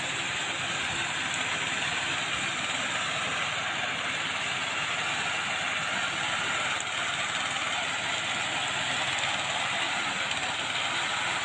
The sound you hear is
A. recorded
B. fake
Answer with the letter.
A